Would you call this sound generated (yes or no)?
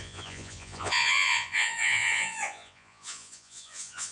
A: yes